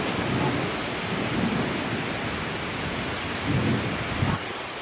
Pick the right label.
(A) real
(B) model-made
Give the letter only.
A